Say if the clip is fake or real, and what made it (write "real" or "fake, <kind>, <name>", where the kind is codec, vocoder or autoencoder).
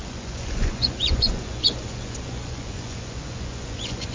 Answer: fake, vocoder, Vocos